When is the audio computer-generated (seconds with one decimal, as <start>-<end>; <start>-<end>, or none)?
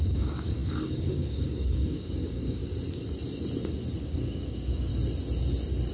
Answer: 0.0-2.6; 4.0-4.9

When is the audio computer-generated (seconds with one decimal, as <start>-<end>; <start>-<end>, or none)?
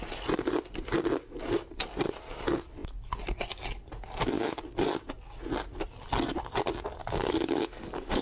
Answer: 7.0-8.2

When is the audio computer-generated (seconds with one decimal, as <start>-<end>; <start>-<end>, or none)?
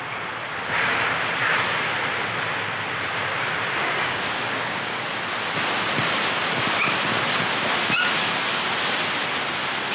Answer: 3.8-5.1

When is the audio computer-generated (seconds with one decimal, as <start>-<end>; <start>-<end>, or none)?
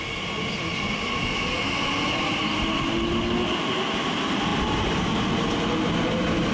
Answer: none